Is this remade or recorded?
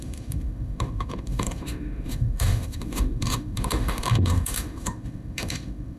remade